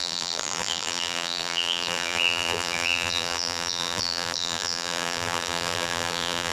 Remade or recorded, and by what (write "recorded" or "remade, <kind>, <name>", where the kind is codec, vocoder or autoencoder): remade, vocoder, BigVGAN v2